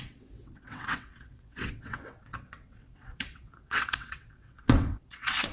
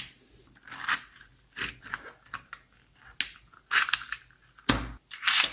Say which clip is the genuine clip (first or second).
second